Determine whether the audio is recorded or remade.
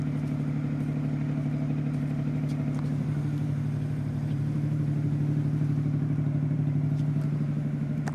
remade